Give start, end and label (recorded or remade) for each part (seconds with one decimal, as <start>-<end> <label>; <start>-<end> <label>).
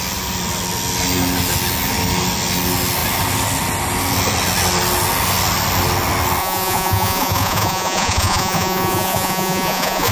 0.0-6.4 recorded; 6.4-10.1 remade